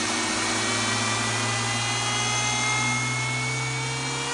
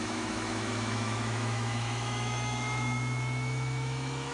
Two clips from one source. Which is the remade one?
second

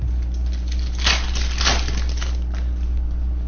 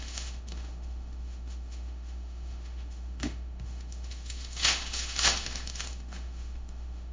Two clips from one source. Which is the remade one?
second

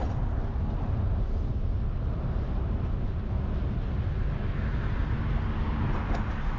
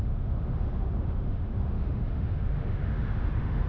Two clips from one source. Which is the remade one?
second